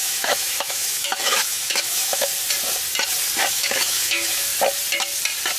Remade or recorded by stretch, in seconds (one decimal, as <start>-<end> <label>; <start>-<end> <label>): 0.0-2.3 remade; 2.3-3.5 recorded; 3.5-4.5 remade; 4.5-5.6 recorded